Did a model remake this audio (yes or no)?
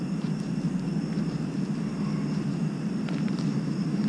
no